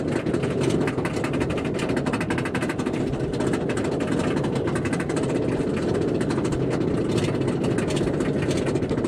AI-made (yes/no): no